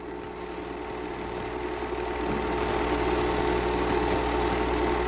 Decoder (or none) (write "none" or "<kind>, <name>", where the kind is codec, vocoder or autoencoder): none